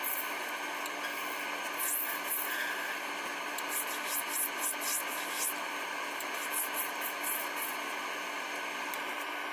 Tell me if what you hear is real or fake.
real